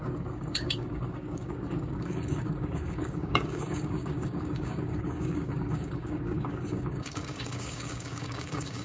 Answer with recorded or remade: remade